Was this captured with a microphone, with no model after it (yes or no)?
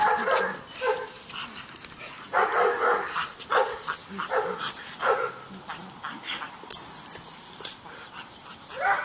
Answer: yes